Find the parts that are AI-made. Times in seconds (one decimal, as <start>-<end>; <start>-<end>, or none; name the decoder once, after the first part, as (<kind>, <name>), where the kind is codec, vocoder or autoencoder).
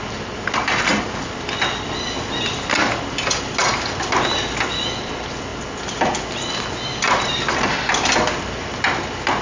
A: none